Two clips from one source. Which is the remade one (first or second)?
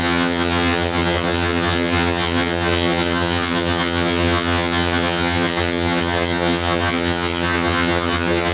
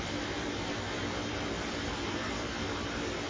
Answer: first